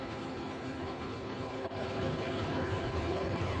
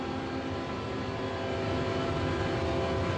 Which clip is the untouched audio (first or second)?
second